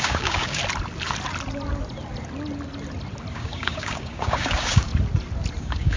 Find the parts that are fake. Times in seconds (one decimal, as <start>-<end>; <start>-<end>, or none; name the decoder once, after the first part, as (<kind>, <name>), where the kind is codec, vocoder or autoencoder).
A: 0.0-0.6 (codec, DAC); 3.3-4.9; 5.6-6.0